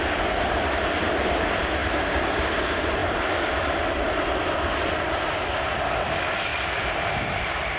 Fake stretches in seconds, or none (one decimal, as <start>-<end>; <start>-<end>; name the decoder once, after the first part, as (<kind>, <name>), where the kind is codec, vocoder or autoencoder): 0.0-1.8 (vocoder, BigVGAN v2); 2.3-7.8